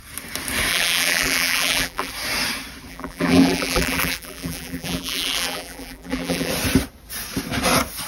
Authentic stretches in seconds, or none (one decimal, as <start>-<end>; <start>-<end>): 0.0-0.7; 2.1-2.9; 6.5-8.1

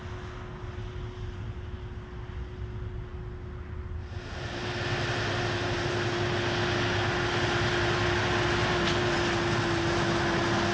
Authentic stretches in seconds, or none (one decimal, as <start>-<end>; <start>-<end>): 0.0-10.7

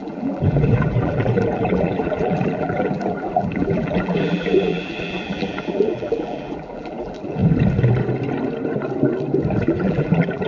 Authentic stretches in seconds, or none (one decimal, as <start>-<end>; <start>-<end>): 7.4-9.6

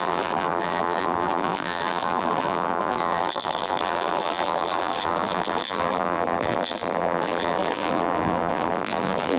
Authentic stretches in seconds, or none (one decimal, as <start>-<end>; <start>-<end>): none

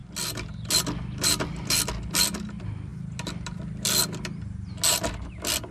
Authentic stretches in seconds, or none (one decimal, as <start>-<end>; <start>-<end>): 0.0-5.7

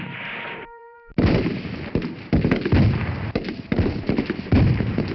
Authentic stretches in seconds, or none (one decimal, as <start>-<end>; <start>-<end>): 1.1-4.2

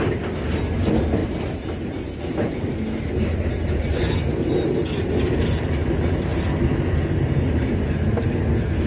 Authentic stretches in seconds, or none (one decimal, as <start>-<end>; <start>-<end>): 0.0-1.2; 2.2-8.9

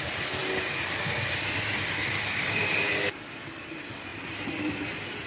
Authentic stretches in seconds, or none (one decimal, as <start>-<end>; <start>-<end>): 0.0-4.1